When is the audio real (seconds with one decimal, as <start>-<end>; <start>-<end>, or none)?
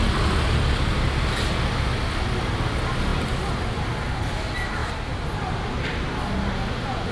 0.0-4.8; 5.4-7.1